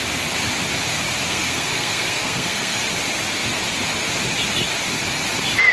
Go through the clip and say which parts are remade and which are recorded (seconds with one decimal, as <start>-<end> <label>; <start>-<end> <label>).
0.0-1.3 recorded; 1.3-2.8 remade; 2.8-5.7 recorded